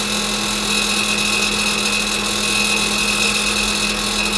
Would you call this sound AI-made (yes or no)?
no